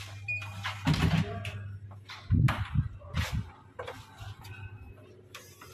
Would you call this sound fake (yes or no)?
no